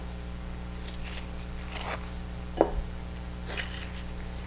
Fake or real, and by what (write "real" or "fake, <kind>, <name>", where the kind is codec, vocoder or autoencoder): real